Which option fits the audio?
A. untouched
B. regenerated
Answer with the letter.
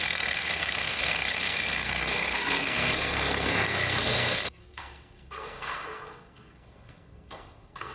B